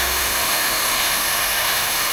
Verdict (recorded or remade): remade